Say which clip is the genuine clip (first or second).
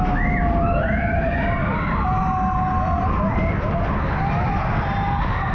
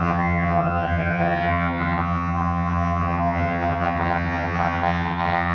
first